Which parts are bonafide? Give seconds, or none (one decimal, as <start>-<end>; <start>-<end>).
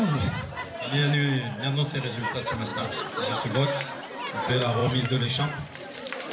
1.0-1.6